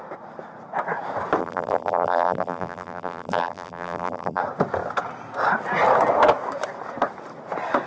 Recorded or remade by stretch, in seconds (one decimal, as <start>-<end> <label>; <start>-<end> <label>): 0.0-1.4 recorded; 1.4-4.4 remade; 4.4-7.9 recorded